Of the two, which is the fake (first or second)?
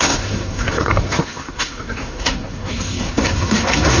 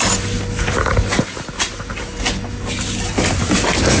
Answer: first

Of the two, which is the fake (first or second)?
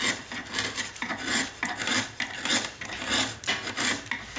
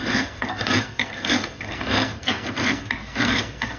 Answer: second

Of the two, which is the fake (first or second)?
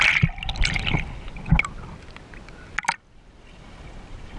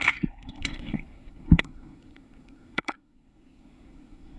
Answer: second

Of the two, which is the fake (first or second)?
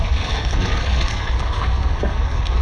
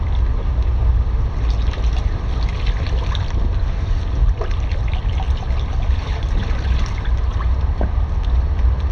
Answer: first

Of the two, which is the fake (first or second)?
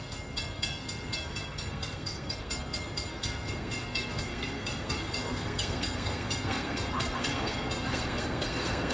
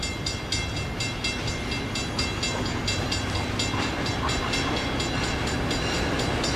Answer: first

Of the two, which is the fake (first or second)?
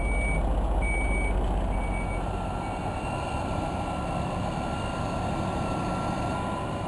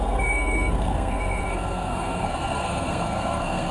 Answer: second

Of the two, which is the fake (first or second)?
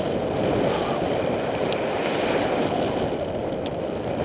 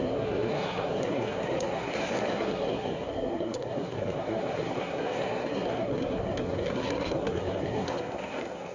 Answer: second